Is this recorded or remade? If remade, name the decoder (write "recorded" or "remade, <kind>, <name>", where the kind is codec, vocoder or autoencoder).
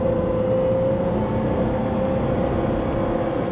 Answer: recorded